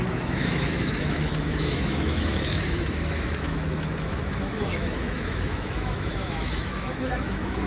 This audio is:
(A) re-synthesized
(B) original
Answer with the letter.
A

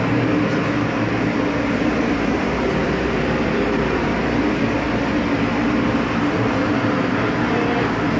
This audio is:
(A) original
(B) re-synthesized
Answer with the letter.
B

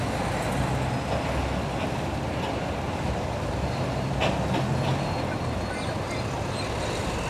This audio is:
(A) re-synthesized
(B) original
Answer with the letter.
B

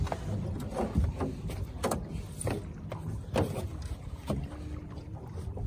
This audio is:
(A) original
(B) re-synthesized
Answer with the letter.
A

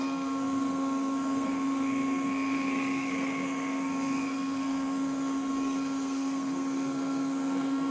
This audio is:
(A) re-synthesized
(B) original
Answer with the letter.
A